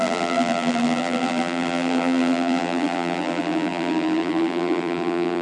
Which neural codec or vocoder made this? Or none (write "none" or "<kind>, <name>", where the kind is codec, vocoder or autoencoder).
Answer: vocoder, BigVGAN v2